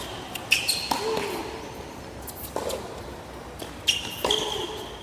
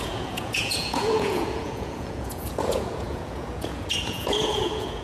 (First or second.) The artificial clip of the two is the second